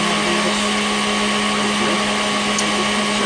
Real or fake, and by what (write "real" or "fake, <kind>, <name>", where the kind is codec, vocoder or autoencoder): real